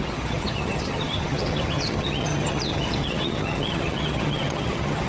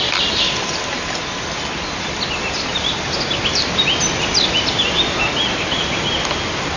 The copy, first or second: first